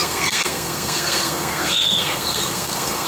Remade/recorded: remade